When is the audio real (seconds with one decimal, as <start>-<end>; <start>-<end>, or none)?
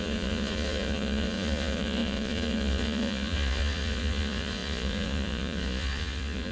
none